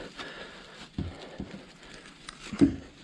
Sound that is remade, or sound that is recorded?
recorded